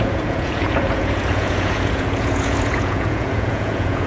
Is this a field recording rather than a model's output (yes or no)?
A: no